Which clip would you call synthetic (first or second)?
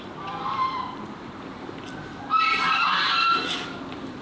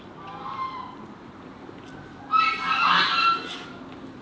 first